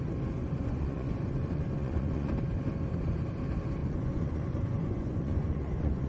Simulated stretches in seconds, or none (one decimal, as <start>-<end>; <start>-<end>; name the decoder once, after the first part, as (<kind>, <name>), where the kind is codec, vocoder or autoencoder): 0.4-2.3 (vocoder, Vocos); 3.8-6.1